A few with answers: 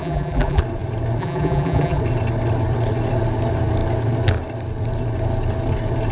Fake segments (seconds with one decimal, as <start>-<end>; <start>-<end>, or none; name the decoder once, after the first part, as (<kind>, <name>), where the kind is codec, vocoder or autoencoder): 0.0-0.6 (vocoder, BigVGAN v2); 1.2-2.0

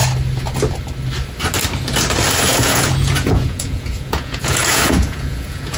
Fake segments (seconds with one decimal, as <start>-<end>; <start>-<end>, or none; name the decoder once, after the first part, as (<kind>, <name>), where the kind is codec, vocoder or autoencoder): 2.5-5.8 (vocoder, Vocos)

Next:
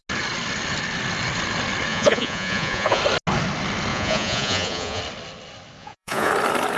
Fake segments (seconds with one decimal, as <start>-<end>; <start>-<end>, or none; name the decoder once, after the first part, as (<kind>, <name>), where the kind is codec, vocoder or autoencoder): 1.9-3.0 (vocoder, Vocos); 3.9-5.0; 5.8-6.3

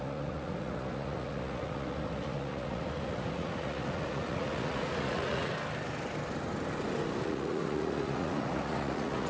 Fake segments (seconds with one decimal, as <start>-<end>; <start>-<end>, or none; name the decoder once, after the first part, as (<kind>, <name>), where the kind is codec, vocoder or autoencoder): 0.0-5.5 (vocoder, Vocos); 7.2-9.3

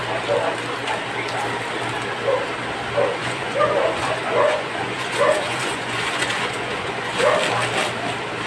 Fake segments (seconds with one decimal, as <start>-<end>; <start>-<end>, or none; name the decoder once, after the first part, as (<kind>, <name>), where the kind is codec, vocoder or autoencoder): 3.2-7.3 (vocoder, Vocos)